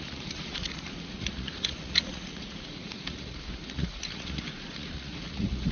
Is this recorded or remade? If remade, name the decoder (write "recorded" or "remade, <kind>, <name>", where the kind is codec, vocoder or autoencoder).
remade, vocoder, Vocos